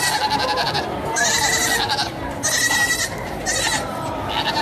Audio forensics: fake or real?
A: real